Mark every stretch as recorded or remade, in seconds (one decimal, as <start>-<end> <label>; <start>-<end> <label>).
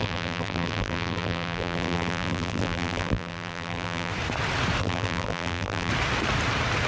0.0-4.1 remade; 4.1-4.8 recorded; 4.8-5.9 remade; 5.9-6.9 recorded